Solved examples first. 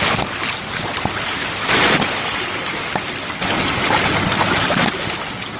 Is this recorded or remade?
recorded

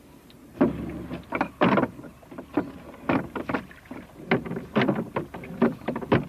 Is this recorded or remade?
recorded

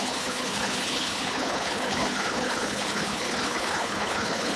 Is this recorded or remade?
remade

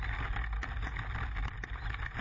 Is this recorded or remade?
recorded